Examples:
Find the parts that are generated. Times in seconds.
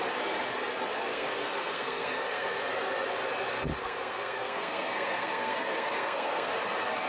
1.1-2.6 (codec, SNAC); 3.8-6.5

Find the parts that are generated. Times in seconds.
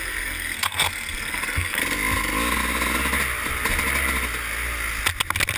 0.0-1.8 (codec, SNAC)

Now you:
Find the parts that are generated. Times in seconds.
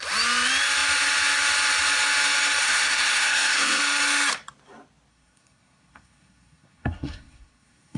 2.6-3.8 (codec, SNAC); 5.1-8.0